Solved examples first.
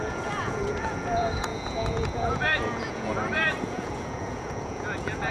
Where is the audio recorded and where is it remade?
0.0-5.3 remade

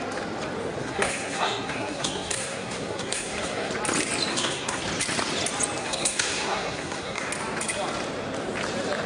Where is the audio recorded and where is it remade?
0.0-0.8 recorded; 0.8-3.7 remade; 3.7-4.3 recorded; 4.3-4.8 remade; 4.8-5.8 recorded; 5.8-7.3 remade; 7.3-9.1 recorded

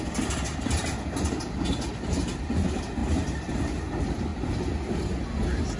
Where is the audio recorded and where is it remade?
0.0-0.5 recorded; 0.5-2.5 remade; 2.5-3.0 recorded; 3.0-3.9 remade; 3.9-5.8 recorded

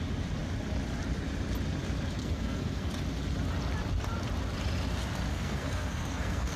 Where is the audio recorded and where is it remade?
0.0-2.2 recorded; 2.2-2.9 remade; 2.9-5.3 recorded; 5.3-6.6 remade

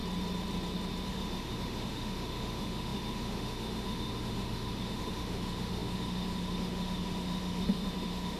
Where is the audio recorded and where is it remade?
0.0-1.1 recorded; 1.1-8.4 remade

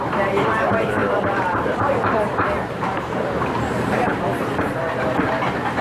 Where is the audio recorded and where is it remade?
0.0-4.1 remade; 4.1-5.8 recorded

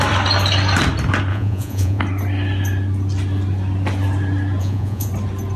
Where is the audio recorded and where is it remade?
0.0-1.3 recorded; 1.3-2.0 remade; 2.0-4.6 recorded; 4.6-5.1 remade; 5.1-5.6 recorded